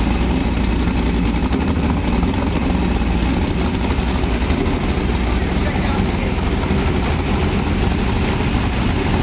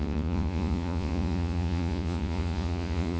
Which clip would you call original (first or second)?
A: first